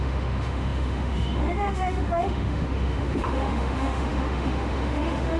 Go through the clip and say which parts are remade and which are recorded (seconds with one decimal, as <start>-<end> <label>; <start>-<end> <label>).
0.0-5.4 remade